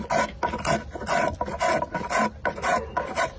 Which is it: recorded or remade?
recorded